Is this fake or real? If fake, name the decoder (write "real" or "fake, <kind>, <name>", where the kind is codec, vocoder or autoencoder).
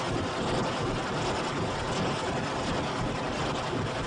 real